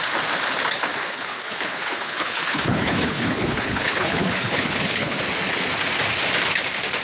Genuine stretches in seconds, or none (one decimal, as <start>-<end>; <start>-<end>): 0.0-1.0; 5.2-7.0